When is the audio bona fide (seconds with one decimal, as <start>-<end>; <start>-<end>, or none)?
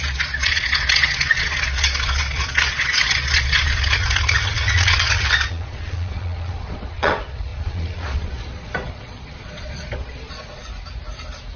10.6-11.6